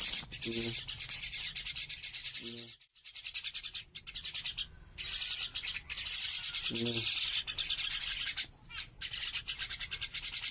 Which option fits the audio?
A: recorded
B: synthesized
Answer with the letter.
A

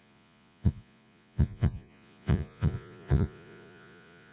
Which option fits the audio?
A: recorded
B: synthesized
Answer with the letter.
B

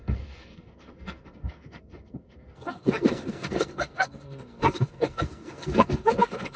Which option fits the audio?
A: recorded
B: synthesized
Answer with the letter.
B